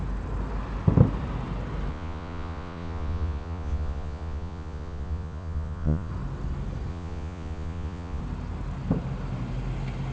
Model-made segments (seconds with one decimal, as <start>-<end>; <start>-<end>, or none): 1.9-6.1; 6.9-8.2